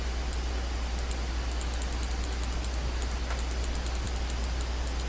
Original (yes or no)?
yes